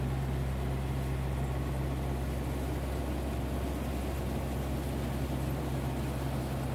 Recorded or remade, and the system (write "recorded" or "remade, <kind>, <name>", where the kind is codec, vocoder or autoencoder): recorded